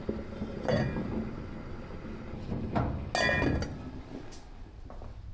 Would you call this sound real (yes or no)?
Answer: yes